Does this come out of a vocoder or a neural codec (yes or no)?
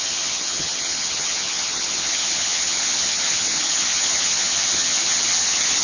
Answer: yes